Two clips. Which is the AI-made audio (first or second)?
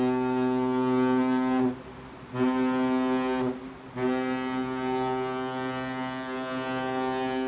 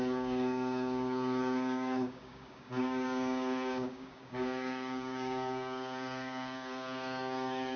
second